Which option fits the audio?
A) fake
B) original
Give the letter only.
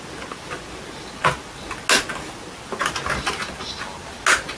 B